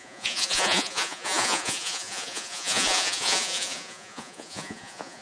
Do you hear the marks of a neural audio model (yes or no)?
yes